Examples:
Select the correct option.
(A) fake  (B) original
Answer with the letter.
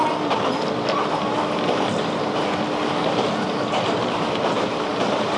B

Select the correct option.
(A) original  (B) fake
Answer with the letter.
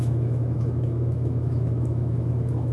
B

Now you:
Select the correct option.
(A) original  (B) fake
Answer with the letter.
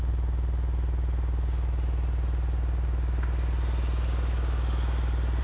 A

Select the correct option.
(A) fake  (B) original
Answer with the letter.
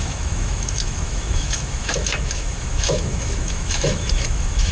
A